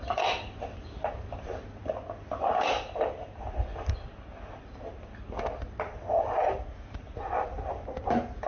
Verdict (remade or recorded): recorded